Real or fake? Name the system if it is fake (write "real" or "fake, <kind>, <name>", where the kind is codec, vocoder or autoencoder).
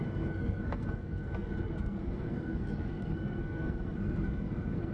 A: fake, codec, SNAC